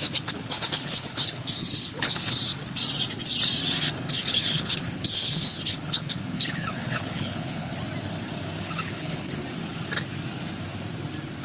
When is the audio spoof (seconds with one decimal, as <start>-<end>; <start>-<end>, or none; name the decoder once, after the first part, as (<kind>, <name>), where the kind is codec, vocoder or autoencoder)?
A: 0.0-2.4 (codec, HILCodec); 4.1-7.7; 8.6-9.4